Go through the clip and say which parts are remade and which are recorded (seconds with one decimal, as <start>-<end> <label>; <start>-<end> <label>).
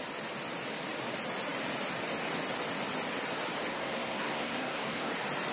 0.0-3.7 recorded; 3.7-5.1 remade; 5.1-5.5 recorded